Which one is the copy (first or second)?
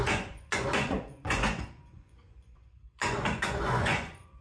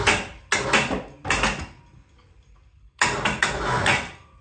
first